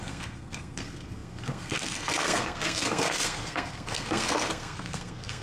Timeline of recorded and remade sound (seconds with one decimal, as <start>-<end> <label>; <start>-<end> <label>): 0.0-5.4 remade